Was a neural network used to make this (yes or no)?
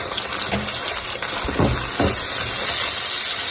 no